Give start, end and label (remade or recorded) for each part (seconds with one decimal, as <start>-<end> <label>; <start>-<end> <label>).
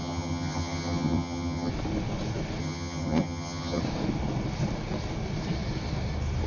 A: 0.0-1.7 remade; 1.7-2.6 recorded; 2.6-3.8 remade; 3.8-6.5 recorded